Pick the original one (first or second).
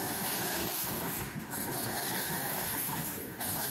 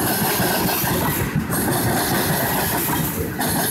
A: second